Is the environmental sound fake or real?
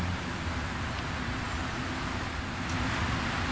real